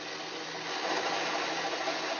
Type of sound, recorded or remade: recorded